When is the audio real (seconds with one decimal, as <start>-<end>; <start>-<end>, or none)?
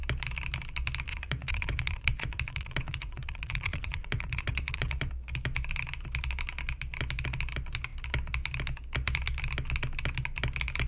0.0-1.1; 5.1-10.9